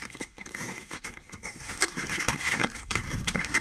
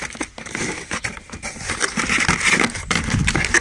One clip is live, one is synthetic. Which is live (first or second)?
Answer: second